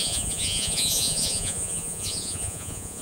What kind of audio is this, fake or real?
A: fake